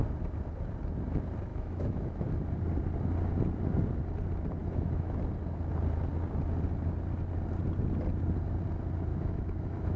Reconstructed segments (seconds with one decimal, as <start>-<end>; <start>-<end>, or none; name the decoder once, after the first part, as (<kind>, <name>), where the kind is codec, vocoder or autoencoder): 1.5-2.3 (autoencoder, DAC-VAE); 4.6-5.2; 9.1-10.0